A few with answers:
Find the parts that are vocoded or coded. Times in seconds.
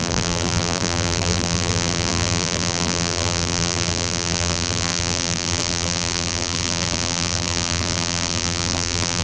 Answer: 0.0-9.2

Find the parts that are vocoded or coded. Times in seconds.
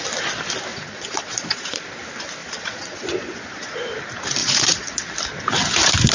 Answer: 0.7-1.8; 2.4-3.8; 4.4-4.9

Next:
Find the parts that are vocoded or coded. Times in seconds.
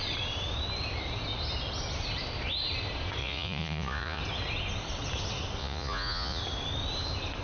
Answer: 3.2-4.2; 5.6-6.4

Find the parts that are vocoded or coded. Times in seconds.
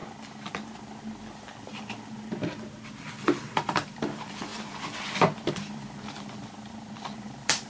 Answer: 3.0-4.5; 5.5-7.7